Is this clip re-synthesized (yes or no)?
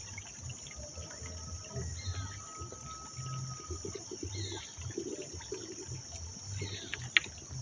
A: no